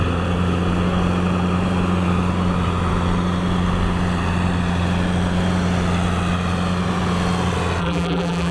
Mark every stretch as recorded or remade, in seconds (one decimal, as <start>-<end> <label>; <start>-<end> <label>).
0.0-7.8 recorded; 7.8-8.5 remade